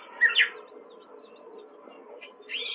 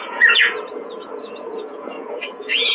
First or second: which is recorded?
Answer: first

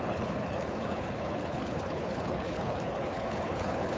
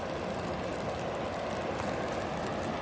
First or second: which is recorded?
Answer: second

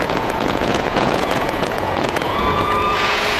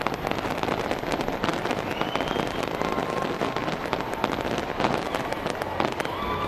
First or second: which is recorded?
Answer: second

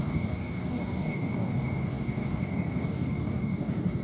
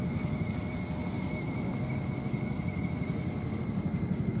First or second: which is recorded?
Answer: second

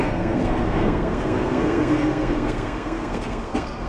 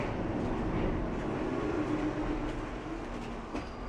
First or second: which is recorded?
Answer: second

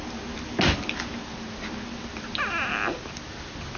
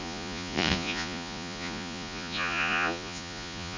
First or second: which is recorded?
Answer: first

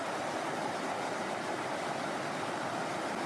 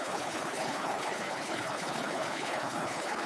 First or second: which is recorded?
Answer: first